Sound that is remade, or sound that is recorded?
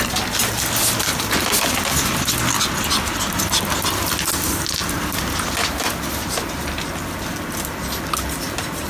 recorded